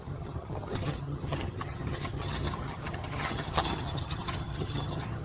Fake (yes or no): yes